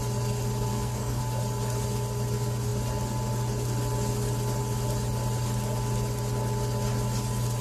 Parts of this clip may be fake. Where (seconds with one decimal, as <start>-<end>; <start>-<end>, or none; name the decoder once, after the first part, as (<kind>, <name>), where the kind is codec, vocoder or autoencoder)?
0.7-1.2 (codec, SNAC)